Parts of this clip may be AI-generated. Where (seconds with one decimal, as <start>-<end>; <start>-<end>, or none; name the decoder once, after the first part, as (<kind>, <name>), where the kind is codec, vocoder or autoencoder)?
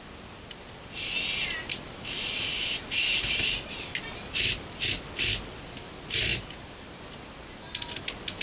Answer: none